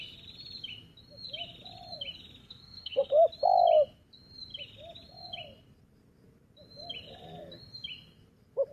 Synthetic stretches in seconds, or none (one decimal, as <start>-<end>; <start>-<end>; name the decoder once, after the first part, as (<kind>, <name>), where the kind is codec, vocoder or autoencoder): 2.4-3.1 (codec, SNAC)